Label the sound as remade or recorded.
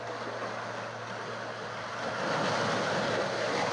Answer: recorded